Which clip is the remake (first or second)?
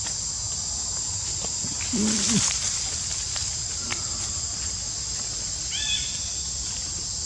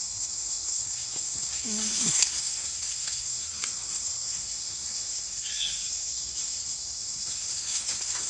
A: second